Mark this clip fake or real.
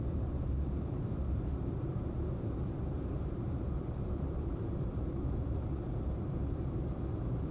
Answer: fake